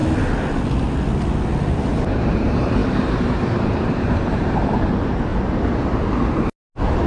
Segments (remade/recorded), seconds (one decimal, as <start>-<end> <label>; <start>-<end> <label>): 0.0-1.9 recorded; 1.9-5.3 remade; 5.3-7.1 recorded